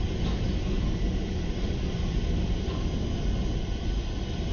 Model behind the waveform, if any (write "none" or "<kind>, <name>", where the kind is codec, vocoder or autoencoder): none